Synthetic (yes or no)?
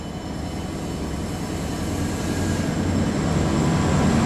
no